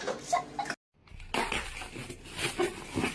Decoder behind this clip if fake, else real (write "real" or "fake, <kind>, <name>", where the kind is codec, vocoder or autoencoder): real